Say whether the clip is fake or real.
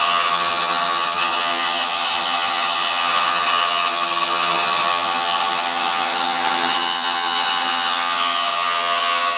fake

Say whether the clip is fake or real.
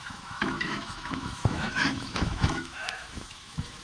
fake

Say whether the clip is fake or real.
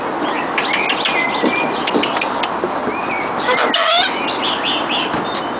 real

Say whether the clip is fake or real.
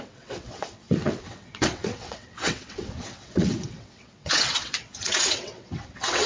fake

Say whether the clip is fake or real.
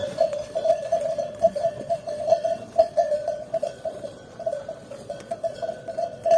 fake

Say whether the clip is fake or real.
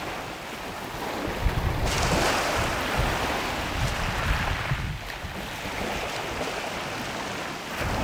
real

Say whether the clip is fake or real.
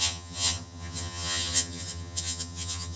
fake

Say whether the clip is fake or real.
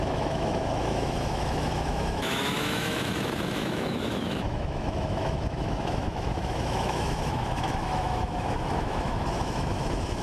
fake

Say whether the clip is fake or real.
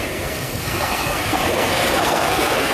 fake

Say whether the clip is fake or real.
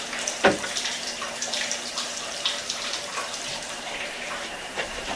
fake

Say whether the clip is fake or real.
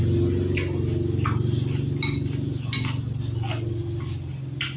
real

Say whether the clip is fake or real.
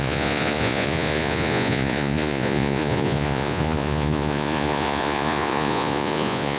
fake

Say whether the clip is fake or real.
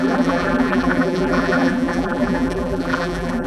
fake